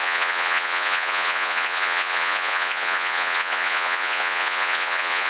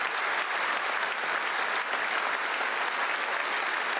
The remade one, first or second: first